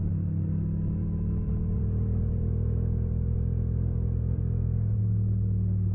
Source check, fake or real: real